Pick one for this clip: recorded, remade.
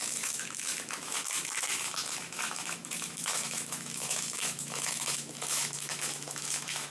remade